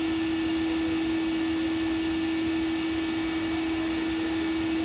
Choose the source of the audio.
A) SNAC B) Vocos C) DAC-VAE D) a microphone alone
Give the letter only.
D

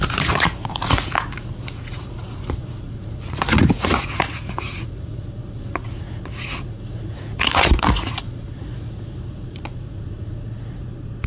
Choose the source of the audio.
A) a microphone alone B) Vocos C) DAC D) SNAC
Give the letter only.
B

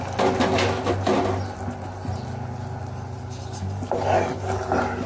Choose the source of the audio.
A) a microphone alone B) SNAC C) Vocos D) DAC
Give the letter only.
A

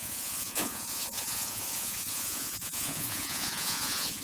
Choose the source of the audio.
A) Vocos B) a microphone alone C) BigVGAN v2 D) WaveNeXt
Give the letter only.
A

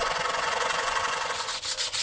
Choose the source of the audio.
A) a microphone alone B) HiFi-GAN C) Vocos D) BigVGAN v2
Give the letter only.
C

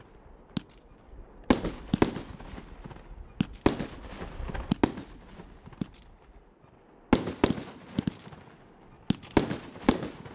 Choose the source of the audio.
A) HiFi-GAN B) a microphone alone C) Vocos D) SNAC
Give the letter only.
B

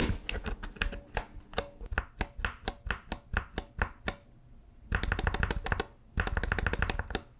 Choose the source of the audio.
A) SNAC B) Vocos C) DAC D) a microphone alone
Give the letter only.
D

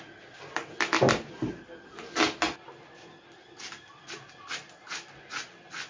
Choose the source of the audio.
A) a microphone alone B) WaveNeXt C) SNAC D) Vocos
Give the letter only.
A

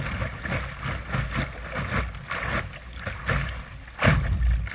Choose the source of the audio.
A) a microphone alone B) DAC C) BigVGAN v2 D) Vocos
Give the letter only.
A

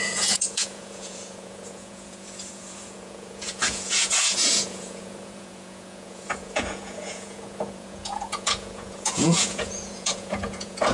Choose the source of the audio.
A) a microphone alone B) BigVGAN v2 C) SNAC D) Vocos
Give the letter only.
D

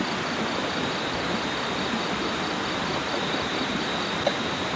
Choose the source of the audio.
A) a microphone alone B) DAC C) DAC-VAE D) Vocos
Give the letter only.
A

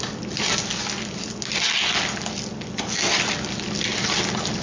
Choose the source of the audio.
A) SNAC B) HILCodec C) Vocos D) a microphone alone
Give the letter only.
D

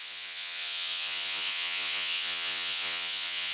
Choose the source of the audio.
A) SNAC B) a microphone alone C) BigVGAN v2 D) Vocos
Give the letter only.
D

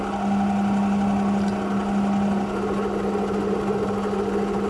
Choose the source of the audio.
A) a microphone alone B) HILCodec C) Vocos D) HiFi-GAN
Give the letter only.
A